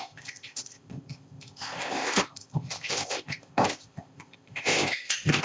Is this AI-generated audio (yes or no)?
yes